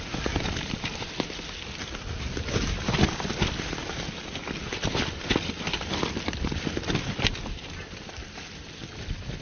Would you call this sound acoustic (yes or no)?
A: yes